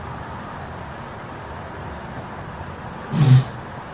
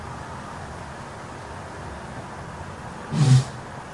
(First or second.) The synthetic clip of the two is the first